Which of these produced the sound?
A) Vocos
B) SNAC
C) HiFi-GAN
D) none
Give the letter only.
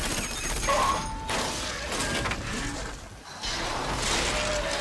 D